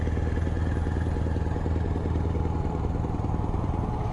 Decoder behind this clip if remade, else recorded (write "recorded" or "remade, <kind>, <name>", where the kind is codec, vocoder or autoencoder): remade, vocoder, BigVGAN v2